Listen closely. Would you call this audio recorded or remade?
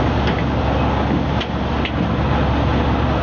recorded